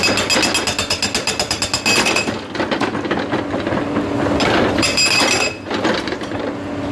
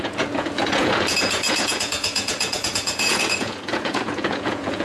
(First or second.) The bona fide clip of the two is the first